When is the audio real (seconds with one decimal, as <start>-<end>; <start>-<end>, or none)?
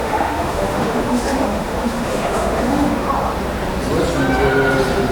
3.1-5.1